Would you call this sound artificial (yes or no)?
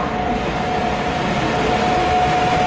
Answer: no